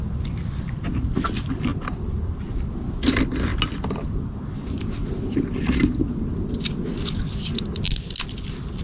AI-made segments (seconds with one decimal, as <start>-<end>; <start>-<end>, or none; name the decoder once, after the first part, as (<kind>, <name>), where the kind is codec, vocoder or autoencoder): none

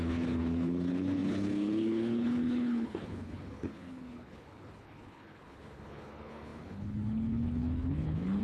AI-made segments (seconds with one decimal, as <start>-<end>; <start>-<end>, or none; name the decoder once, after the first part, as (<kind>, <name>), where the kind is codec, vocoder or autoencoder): 0.0-8.4 (codec, HILCodec)

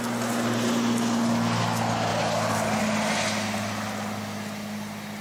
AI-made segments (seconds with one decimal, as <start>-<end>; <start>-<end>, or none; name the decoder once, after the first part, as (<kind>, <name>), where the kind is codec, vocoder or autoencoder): none

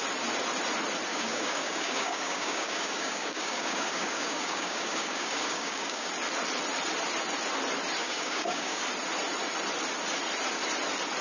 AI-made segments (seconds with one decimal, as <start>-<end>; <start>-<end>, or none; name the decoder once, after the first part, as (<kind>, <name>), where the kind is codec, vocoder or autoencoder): 1.1-6.1 (codec, DAC); 8.0-8.8

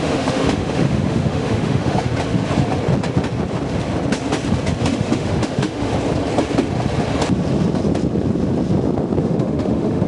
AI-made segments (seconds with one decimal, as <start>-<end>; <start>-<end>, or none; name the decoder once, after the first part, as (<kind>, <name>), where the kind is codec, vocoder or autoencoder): 0.0-2.1 (autoencoder, DAC-VAE); 4.8-5.9; 9.2-10.1

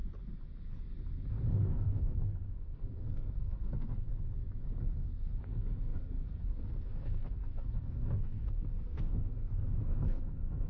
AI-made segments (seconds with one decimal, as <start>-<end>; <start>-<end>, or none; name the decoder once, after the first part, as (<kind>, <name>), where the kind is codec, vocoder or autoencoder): 1.3-4.1 (codec, SNAC); 4.8-10.7